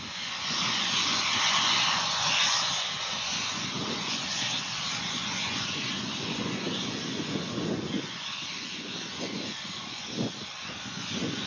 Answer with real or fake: fake